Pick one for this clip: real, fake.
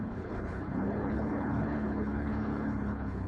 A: fake